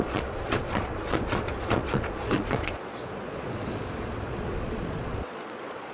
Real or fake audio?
fake